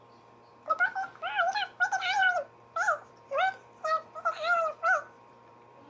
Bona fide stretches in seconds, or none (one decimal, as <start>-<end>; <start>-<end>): 0.0-2.2